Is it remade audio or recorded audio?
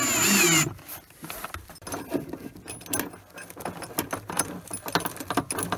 recorded